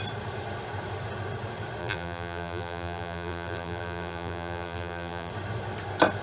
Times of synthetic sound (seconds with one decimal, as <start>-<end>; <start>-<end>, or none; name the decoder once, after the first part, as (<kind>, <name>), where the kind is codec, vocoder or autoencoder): 1.8-5.3 (vocoder, BigVGAN v2)

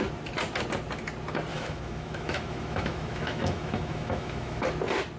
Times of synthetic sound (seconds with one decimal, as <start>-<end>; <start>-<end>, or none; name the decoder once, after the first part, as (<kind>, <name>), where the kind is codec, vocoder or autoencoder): 1.5-4.6 (autoencoder, DAC-VAE)

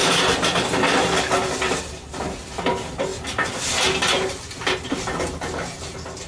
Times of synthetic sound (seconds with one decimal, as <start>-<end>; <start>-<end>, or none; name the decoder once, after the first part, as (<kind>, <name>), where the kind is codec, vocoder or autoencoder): none

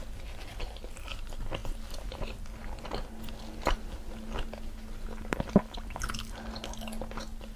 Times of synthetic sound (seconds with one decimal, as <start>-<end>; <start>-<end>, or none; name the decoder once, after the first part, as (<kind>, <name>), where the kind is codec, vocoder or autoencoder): none

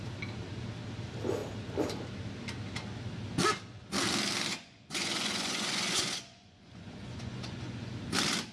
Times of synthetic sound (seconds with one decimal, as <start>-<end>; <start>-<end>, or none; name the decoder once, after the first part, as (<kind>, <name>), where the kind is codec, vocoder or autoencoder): 4.5-7.9 (vocoder, Vocos)